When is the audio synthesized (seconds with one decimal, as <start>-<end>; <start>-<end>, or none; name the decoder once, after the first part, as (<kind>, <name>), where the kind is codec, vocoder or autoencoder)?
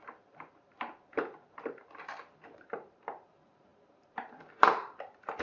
0.0-5.4 (vocoder, BigVGAN v2)